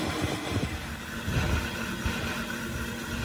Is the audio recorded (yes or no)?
yes